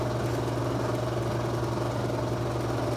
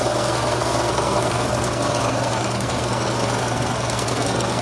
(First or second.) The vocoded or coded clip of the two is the second